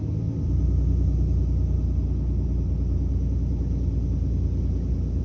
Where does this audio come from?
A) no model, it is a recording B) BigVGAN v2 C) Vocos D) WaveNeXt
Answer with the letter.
A